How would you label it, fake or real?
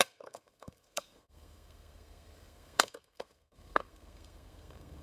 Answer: fake